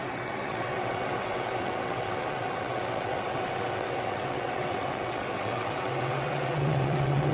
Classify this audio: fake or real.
fake